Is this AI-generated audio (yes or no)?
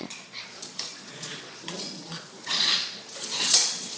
yes